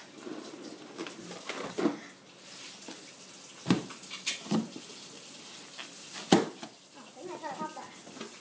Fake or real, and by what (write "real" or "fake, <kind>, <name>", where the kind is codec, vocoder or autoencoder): real